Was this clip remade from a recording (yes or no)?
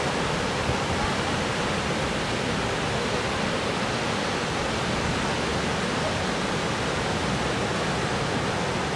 no